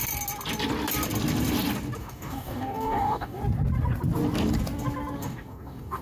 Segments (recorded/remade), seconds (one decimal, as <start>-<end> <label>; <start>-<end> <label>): 0.0-2.0 recorded; 2.0-3.4 remade; 3.4-5.2 recorded; 5.2-6.0 remade